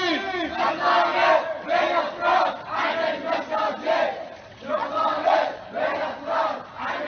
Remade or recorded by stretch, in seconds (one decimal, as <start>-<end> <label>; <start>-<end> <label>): 0.0-4.5 recorded; 4.5-5.6 remade; 5.6-7.1 recorded